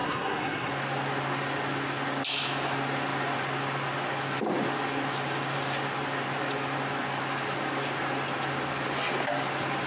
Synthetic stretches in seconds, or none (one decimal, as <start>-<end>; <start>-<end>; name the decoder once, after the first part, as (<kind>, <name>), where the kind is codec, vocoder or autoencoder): 0.0-0.7 (codec, SNAC)